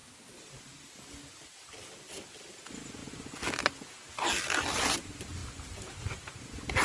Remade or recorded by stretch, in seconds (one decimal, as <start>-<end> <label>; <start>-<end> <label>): 0.0-6.8 recorded

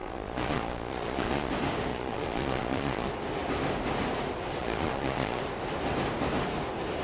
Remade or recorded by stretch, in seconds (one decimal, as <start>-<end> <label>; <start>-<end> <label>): 0.0-1.5 remade; 1.5-1.9 recorded; 1.9-3.1 remade; 3.1-4.6 recorded; 4.6-5.4 remade; 5.4-7.0 recorded

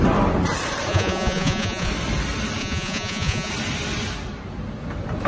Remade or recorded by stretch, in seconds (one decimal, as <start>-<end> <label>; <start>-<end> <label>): 0.0-0.9 recorded; 0.9-1.9 remade; 1.9-2.6 recorded; 2.6-3.5 remade; 3.5-5.3 recorded

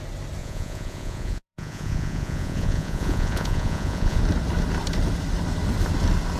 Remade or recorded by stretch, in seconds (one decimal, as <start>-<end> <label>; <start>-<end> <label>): 0.0-0.4 recorded; 0.4-4.2 remade; 4.2-6.4 recorded

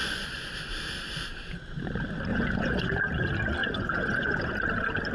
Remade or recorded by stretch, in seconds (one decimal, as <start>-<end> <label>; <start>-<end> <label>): 0.0-0.5 remade; 0.5-2.3 recorded; 2.3-3.0 remade; 3.0-3.6 recorded; 3.6-4.5 remade; 4.5-5.1 recorded